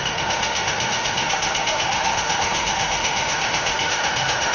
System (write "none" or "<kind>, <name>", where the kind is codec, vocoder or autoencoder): autoencoder, DAC-VAE